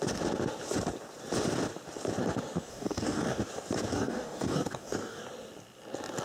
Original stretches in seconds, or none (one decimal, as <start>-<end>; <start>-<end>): 0.0-2.7; 3.4-3.9; 5.2-6.2